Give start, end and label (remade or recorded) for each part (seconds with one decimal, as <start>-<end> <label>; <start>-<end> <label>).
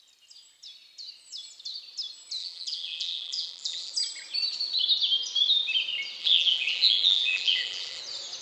0.0-2.4 recorded; 2.4-3.9 remade; 3.9-6.2 recorded; 6.2-8.0 remade; 8.0-8.4 recorded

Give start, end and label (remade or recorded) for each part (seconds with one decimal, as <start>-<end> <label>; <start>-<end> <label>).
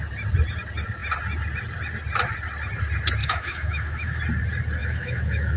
0.0-3.2 recorded; 3.2-4.2 remade; 4.2-4.8 recorded; 4.8-5.6 remade